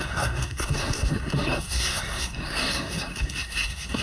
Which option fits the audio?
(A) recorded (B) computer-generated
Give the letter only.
B